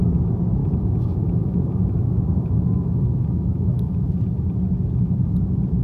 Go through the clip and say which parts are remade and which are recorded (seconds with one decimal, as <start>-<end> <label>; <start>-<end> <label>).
0.0-0.6 recorded; 0.6-4.1 remade; 4.1-5.8 recorded